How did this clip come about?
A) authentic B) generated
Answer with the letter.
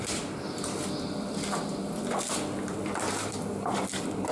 B